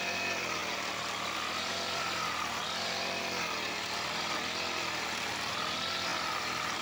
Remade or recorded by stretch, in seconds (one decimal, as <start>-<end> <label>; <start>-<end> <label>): 0.0-6.8 recorded

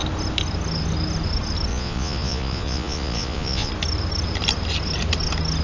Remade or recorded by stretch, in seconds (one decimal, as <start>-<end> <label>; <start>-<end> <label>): 0.0-1.7 recorded; 1.7-3.7 remade; 3.7-5.6 recorded